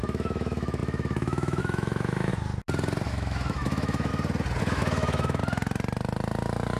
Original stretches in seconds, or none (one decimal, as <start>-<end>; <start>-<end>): 2.3-3.1; 4.1-4.6; 5.4-6.8